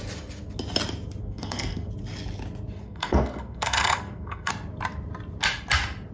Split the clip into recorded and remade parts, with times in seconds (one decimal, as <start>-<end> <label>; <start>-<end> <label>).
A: 0.0-1.2 recorded; 1.2-1.9 remade; 1.9-2.8 recorded; 2.8-4.5 remade; 4.5-6.1 recorded